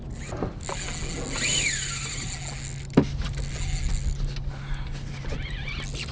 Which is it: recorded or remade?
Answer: recorded